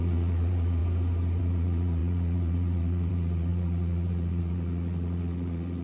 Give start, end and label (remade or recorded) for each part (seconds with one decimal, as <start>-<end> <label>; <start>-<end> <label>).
0.0-0.8 remade; 0.8-1.4 recorded; 1.4-5.8 remade